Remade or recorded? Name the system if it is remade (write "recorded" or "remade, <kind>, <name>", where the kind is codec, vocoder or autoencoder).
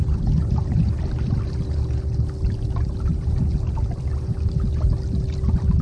recorded